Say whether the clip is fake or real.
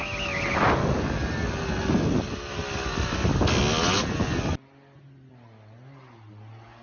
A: real